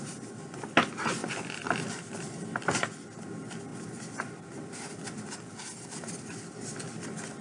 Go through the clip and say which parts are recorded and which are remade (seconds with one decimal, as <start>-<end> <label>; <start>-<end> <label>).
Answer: 0.0-1.2 recorded; 1.2-2.8 remade; 2.8-7.4 recorded